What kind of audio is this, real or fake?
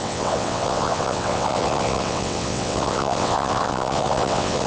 fake